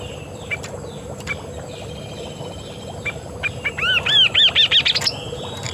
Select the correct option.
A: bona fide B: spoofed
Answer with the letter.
A